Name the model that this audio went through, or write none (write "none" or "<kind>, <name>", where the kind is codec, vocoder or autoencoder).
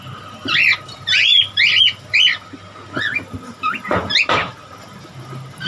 none